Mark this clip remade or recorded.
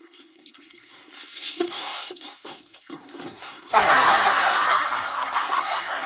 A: remade